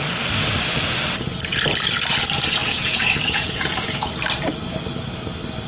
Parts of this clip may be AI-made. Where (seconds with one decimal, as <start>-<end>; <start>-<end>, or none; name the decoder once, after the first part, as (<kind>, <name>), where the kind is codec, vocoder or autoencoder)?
2.6-4.1 (vocoder, Vocos)